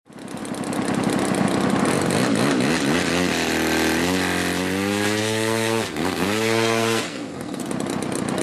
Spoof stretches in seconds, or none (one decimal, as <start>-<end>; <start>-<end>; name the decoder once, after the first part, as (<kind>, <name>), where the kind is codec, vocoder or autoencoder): 5.2-7.7 (codec, SNAC)